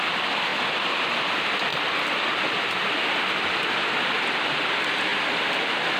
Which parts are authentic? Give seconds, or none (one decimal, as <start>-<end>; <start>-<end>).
0.0-1.7; 4.1-5.1